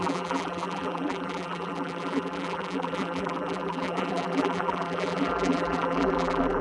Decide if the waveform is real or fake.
fake